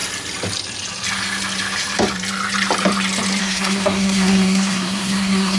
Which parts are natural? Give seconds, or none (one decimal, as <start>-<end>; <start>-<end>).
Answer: 0.0-3.4